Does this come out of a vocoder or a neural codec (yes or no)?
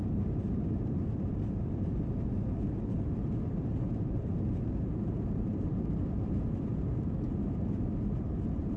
yes